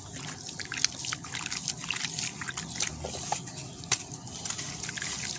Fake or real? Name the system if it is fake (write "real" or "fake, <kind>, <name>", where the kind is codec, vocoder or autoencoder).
real